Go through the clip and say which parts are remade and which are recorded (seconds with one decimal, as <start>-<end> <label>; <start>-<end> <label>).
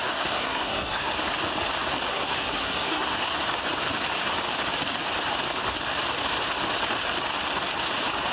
0.0-1.1 remade; 1.1-2.1 recorded; 2.1-3.4 remade; 3.4-8.3 recorded